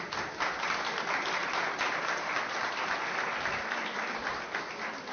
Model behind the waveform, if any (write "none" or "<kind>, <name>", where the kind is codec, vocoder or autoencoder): none